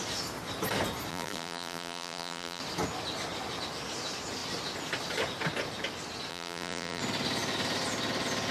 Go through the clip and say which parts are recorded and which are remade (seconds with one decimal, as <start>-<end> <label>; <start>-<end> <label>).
0.0-1.1 recorded; 1.1-2.6 remade; 2.6-6.3 recorded; 6.3-7.0 remade; 7.0-8.5 recorded